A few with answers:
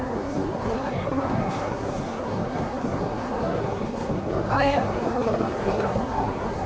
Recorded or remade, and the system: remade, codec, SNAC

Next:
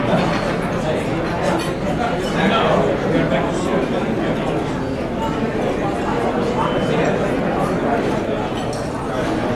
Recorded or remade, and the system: recorded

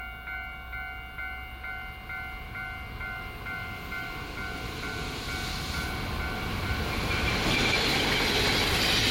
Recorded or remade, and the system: recorded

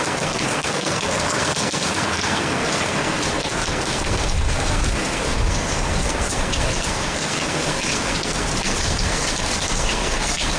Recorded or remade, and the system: remade, codec, SNAC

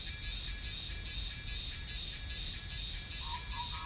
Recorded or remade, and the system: recorded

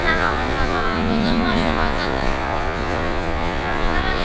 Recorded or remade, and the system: remade, vocoder, Vocos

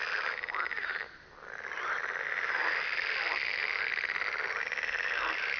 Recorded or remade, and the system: recorded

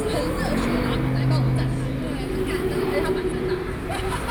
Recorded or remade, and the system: recorded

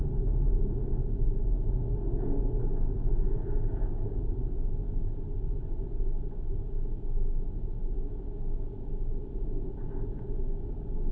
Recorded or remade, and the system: recorded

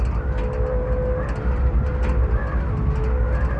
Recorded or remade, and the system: recorded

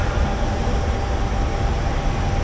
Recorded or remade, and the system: recorded